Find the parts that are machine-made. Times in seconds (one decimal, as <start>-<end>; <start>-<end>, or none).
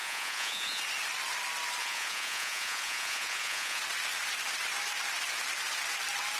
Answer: 0.0-0.8; 1.8-3.8